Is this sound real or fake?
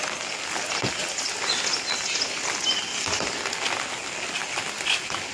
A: real